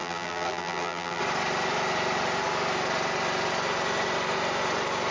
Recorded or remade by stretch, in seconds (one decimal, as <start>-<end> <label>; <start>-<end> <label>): 0.0-1.2 remade; 1.2-5.1 recorded